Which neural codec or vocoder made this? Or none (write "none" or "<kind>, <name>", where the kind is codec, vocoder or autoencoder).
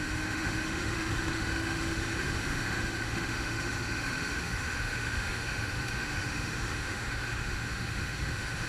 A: autoencoder, DAC-VAE